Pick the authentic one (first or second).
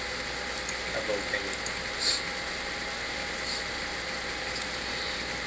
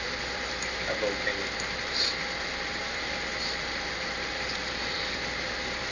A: first